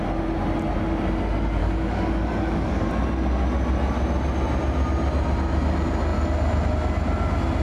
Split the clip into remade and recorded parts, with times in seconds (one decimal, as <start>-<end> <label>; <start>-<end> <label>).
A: 0.0-1.6 recorded; 1.6-2.9 remade; 2.9-7.6 recorded